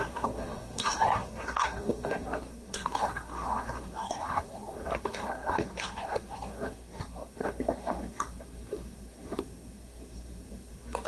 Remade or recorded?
remade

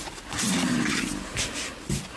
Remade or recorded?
recorded